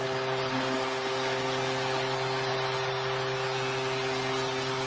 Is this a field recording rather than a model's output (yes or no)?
yes